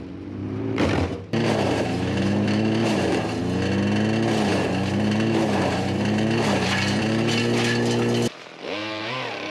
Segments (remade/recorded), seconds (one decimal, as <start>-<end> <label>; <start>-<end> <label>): 0.0-0.4 recorded; 0.4-3.4 remade; 3.4-4.5 recorded; 4.5-7.4 remade; 7.4-8.8 recorded; 8.8-9.5 remade